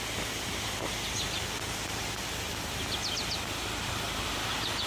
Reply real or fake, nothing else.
fake